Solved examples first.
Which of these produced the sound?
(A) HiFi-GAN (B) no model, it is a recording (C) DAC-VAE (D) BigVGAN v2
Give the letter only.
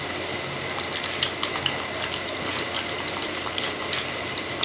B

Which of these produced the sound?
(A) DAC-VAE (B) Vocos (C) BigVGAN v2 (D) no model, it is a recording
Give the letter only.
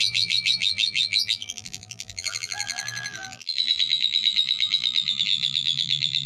C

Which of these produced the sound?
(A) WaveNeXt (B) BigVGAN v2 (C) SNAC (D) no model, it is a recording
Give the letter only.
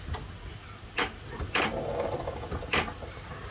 D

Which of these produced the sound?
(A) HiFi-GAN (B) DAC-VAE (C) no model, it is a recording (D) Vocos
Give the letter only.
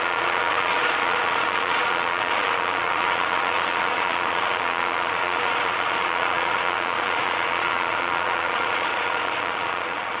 D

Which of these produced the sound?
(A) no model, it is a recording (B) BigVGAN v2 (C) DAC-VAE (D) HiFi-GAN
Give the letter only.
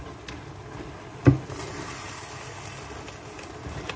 A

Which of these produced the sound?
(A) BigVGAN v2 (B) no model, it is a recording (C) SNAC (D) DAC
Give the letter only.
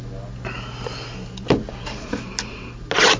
B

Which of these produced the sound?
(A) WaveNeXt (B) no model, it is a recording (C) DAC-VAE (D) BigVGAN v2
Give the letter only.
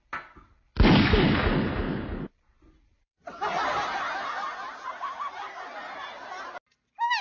B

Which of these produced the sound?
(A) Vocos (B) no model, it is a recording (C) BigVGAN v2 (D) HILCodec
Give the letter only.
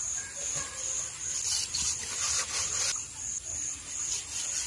B